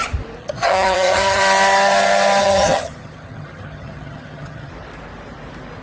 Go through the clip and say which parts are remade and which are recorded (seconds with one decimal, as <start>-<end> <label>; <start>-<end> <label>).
0.0-0.4 recorded; 0.4-1.4 remade; 1.4-2.4 recorded; 2.4-4.7 remade; 4.7-5.8 recorded